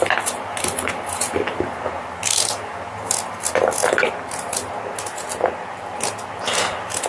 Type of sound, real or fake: real